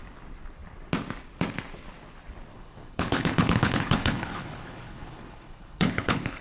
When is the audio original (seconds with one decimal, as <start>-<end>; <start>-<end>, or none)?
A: 0.0-2.5

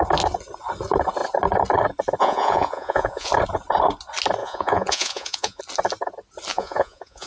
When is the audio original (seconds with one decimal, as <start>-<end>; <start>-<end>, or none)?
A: 0.0-2.2; 3.3-4.4; 5.6-6.5

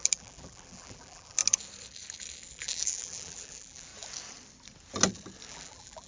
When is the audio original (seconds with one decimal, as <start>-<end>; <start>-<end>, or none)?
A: 1.4-2.5; 3.9-5.5

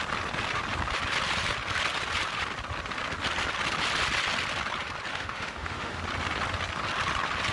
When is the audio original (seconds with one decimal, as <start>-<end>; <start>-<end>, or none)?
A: 0.0-5.1; 6.0-7.5

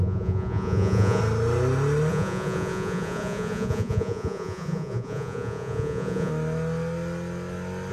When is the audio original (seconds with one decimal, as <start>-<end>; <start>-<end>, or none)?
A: 1.2-2.1; 6.3-7.9

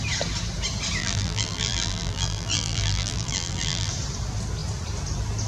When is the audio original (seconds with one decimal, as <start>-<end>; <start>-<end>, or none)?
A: 0.0-1.0; 3.9-5.5

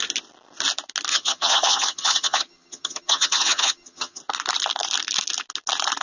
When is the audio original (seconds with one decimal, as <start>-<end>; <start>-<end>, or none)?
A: 0.0-1.1; 4.2-6.0